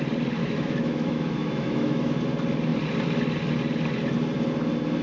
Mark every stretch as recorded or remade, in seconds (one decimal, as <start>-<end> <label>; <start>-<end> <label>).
0.0-0.4 recorded; 0.4-2.2 remade; 2.2-5.0 recorded